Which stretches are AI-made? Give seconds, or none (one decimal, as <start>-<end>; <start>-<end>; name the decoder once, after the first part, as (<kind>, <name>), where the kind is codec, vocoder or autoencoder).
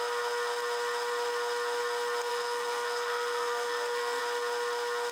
2.3-4.2 (codec, SNAC)